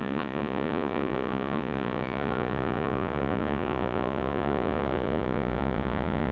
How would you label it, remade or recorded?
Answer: remade